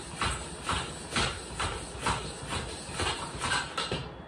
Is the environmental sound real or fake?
real